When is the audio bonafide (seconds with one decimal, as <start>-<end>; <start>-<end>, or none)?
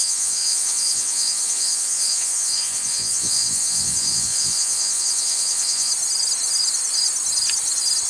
5.9-8.1